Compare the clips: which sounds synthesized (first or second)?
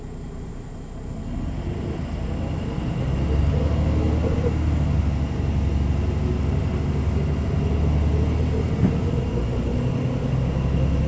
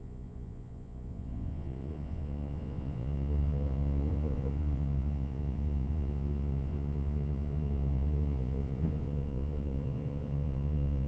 second